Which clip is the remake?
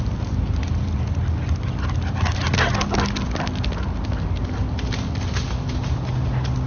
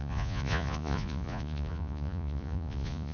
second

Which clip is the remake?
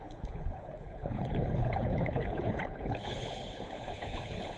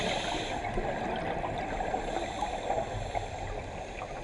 first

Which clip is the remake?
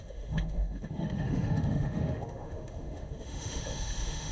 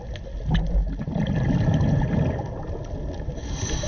first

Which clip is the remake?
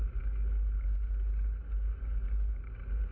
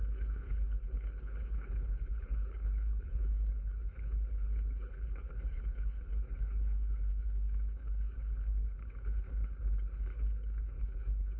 second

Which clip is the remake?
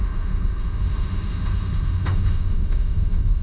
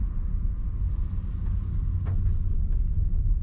first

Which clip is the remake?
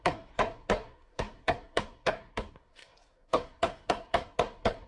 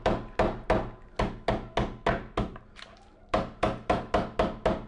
first